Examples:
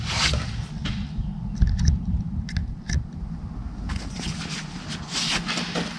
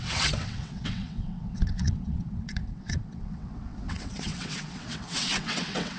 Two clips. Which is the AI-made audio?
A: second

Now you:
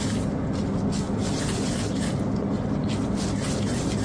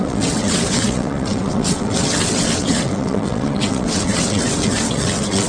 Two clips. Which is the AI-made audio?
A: second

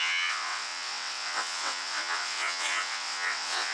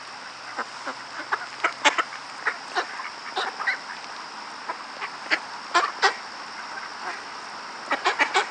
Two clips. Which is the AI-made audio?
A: first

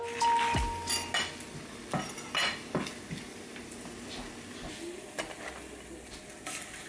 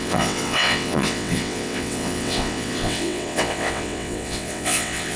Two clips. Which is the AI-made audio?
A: second